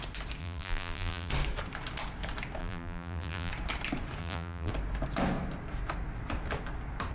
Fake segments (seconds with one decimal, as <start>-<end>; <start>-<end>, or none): 0.4-1.3; 2.6-3.5; 4.2-4.7